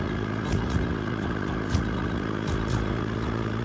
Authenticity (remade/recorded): remade